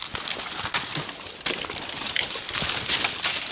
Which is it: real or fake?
real